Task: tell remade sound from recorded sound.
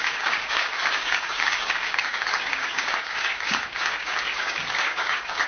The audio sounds remade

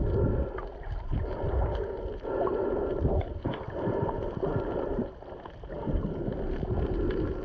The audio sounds recorded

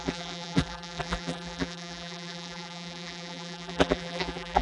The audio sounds remade